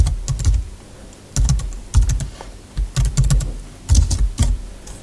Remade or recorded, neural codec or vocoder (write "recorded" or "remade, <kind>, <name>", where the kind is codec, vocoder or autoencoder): recorded